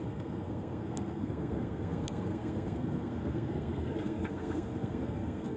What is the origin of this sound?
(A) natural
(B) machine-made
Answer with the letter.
B